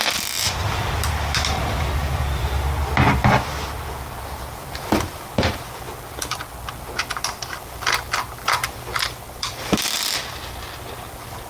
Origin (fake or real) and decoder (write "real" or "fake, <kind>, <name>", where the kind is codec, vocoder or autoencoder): real